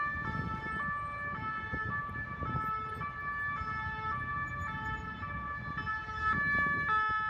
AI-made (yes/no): no